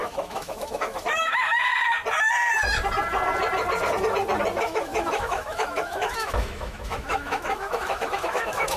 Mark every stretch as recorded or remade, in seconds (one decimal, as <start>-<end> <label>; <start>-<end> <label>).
0.0-1.7 remade; 1.7-4.6 recorded; 4.6-8.8 remade